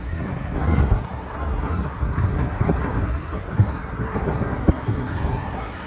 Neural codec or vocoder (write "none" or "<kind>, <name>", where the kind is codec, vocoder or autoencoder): codec, SNAC